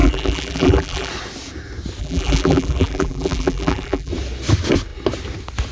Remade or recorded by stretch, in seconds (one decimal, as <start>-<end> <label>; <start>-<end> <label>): 0.0-1.1 remade; 1.1-2.0 recorded; 2.0-4.1 remade; 4.1-5.7 recorded